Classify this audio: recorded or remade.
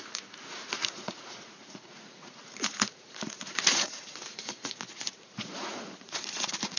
remade